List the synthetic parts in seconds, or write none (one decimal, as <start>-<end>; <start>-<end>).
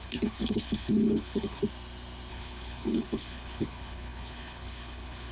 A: 0.0-1.6; 2.3-5.3